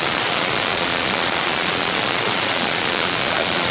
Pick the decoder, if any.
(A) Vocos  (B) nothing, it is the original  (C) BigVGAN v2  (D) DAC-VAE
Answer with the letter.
A